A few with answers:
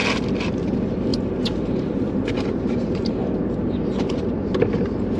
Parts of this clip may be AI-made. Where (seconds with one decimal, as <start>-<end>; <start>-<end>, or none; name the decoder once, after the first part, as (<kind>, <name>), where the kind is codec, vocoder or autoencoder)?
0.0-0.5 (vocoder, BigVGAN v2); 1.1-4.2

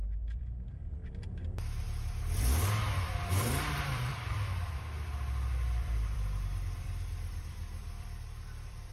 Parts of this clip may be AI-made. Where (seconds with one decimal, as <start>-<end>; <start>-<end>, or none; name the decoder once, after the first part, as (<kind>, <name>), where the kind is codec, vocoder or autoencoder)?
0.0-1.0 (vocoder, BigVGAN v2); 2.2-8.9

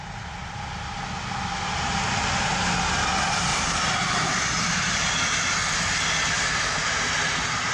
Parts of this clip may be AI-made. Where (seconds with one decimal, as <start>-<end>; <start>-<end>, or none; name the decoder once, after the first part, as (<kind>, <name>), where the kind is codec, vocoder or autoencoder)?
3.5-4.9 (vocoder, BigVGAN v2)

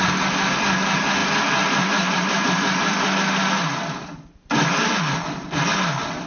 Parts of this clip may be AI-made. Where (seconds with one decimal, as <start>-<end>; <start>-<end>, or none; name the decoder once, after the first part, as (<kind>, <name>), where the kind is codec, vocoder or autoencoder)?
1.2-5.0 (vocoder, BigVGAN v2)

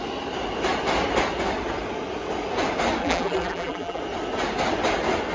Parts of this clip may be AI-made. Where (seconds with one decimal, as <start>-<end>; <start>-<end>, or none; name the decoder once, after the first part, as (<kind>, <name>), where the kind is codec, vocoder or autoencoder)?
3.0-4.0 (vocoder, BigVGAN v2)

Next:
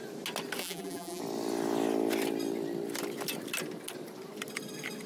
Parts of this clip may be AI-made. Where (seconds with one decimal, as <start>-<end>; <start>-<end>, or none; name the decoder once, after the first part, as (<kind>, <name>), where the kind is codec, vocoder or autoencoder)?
0.6-1.2 (vocoder, BigVGAN v2)

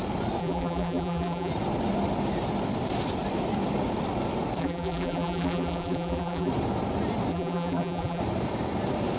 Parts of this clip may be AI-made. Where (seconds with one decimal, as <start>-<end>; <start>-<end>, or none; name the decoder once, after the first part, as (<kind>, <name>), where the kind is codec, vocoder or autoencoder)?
0.4-1.5 (vocoder, BigVGAN v2); 4.6-6.5; 7.3-8.2

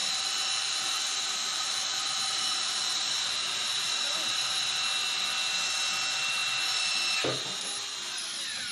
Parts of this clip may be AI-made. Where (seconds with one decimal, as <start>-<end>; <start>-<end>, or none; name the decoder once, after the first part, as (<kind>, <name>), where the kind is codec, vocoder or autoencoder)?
0.0-1.0 (vocoder, BigVGAN v2); 1.5-4.7